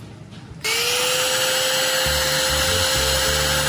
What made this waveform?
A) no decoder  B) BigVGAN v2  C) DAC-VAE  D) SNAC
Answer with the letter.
A